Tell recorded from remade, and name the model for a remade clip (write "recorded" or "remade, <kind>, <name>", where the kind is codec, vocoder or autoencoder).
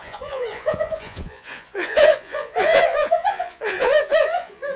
remade, vocoder, Vocos